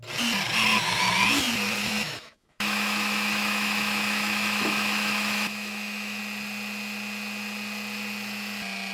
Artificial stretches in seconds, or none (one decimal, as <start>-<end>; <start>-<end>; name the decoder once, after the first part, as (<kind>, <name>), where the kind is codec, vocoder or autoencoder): 1.8-6.2 (autoencoder, DAC-VAE)